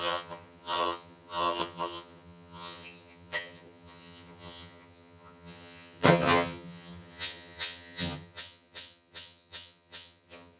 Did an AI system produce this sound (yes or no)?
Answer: yes